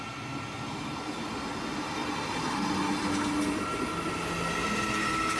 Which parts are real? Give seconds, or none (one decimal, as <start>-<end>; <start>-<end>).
0.0-5.4